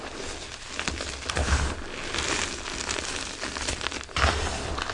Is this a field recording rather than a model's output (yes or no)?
yes